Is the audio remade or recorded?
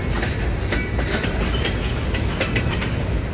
recorded